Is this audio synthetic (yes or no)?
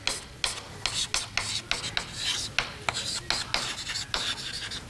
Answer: no